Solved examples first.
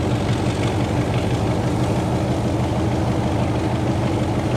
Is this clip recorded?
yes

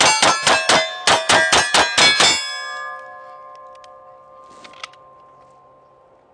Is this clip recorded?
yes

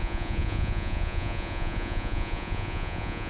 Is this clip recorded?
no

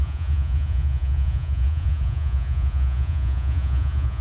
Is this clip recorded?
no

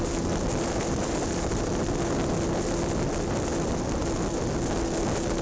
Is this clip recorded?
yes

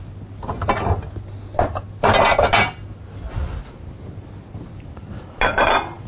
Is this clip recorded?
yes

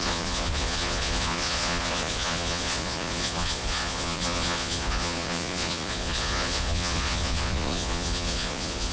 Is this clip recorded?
no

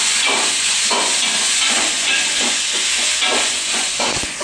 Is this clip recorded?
no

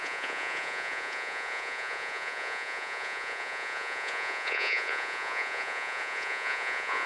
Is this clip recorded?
no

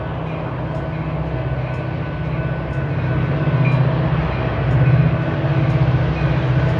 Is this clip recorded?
yes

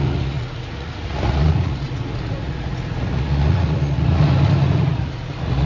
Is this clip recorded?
no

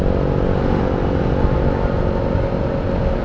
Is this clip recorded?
yes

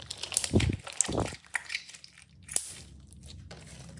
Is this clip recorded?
yes